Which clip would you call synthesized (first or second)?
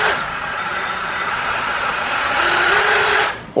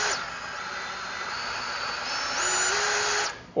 first